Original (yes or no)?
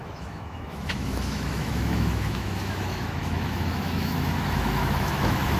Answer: no